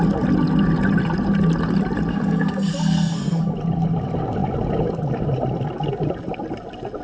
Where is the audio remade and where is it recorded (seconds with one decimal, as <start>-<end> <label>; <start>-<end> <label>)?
0.0-2.1 recorded; 2.1-3.4 remade; 3.4-7.0 recorded